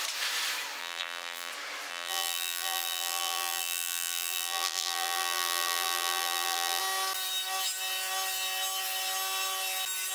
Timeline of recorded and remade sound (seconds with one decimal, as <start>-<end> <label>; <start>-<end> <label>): 0.0-0.8 recorded; 0.8-1.5 remade; 1.5-1.9 recorded; 1.9-6.8 remade; 6.8-10.1 recorded